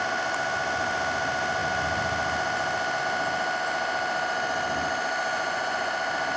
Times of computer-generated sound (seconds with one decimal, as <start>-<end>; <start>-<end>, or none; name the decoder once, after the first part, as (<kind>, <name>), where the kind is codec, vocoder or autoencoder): 5.3-5.9 (vocoder, Vocos)